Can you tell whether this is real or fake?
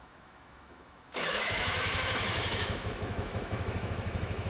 fake